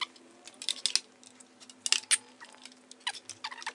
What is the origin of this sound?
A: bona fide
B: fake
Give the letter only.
A